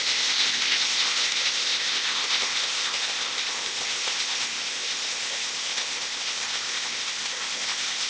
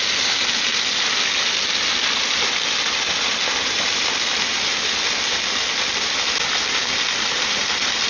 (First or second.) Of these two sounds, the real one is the second